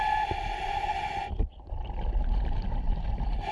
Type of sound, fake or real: real